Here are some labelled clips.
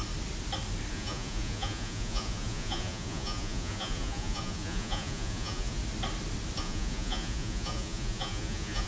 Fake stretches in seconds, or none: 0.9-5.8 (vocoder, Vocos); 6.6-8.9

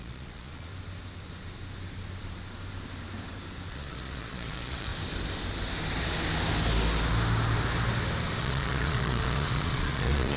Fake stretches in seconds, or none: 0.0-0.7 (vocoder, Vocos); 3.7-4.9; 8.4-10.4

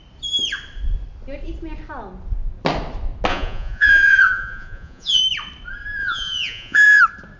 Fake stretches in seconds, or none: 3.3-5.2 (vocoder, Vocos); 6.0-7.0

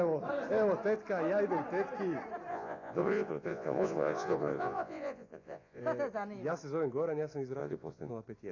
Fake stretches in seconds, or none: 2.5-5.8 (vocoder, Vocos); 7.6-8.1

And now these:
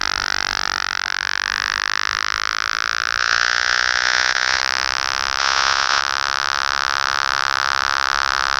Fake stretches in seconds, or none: 3.2-4.6 (vocoder, Vocos); 5.4-6.0

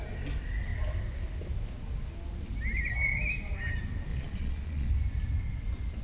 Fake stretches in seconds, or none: 4.1-4.9 (vocoder, Vocos)